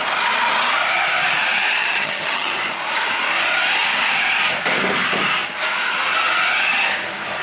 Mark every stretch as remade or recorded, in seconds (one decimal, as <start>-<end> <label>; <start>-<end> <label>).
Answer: 0.0-1.8 recorded; 1.8-2.5 remade; 2.5-7.4 recorded

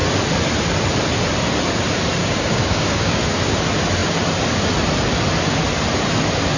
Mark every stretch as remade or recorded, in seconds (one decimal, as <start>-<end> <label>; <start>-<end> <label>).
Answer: 0.0-2.2 recorded; 2.2-3.2 remade; 3.2-6.6 recorded

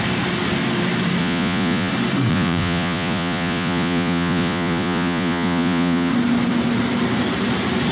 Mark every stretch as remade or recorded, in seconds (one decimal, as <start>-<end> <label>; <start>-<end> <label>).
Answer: 0.0-1.2 recorded; 1.2-1.9 remade; 1.9-2.3 recorded; 2.3-6.1 remade; 6.1-7.9 recorded

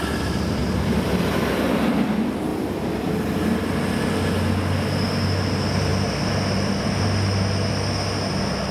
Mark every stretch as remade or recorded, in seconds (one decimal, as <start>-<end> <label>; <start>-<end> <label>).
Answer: 0.0-0.6 recorded; 0.6-1.4 remade; 1.4-2.5 recorded; 2.5-3.1 remade; 3.1-8.7 recorded